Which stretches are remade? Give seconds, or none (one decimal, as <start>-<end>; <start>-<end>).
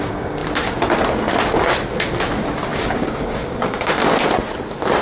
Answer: 2.7-3.9